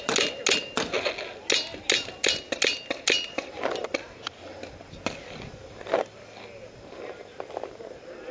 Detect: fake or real real